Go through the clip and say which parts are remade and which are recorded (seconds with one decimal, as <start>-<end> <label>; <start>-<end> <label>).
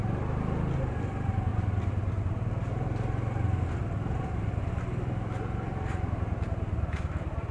0.0-7.5 recorded